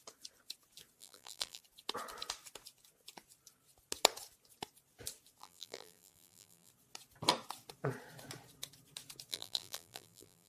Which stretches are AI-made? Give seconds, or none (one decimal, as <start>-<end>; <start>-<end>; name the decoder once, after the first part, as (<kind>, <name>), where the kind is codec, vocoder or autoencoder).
1.0-1.6 (vocoder, BigVGAN v2); 5.4-6.7; 9.3-10.5